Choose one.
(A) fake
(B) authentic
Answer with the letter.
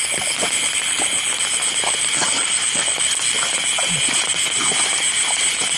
B